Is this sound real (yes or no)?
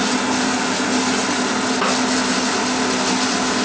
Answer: yes